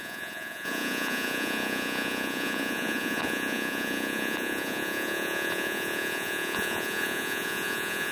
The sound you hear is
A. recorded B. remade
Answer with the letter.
B